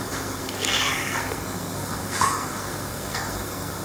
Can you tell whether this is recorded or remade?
remade